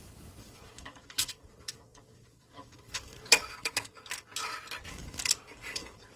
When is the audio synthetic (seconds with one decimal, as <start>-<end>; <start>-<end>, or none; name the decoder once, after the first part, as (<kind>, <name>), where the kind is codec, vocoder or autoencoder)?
0.0-4.3 (codec, DAC); 4.9-6.2